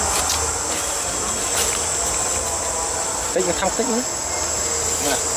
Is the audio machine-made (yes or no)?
no